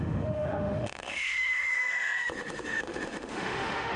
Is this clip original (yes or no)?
no